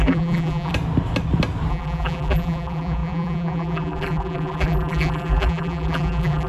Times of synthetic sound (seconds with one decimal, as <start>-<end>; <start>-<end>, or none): 0.0-0.7; 1.7-6.5

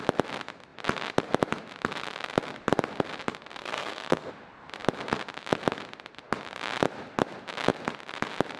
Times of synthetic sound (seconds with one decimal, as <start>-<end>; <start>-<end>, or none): 3.6-4.3

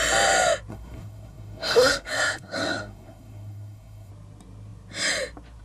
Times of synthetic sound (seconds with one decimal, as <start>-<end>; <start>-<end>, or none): 0.7-4.1

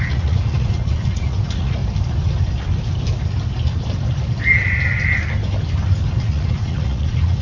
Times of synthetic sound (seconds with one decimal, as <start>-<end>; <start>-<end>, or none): 0.0-1.8; 6.2-7.4

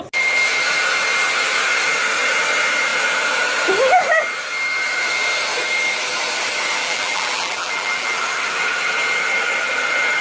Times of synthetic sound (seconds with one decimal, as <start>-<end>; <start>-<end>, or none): 6.8-8.2

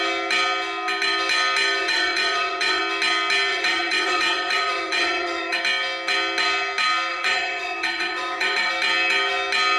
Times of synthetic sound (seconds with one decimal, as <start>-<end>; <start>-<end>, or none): 1.8-2.8; 3.5-5.6; 7.1-8.7

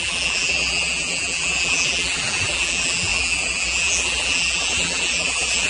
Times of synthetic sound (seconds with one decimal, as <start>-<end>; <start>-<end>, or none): 0.0-5.7